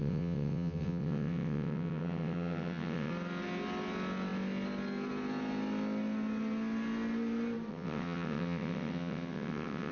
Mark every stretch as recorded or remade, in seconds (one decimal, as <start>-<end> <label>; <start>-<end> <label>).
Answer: 0.0-3.1 remade; 3.1-7.7 recorded; 7.7-9.9 remade